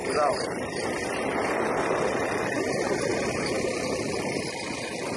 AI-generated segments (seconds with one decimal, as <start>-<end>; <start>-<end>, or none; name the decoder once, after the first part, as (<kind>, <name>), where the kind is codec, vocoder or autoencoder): 0.0-1.7 (vocoder, BigVGAN v2); 3.1-5.2